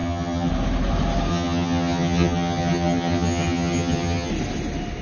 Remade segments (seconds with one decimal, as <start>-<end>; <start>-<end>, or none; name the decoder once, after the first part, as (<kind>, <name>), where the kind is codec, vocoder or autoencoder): 0.0-0.5 (vocoder, HiFi-GAN); 1.3-4.3